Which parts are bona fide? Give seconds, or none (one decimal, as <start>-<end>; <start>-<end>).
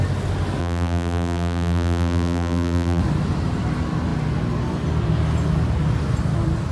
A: 0.0-0.6; 3.0-6.7